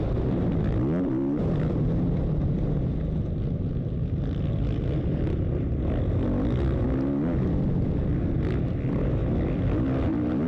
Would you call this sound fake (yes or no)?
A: no